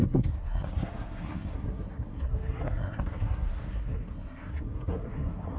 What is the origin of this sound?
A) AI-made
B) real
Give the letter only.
A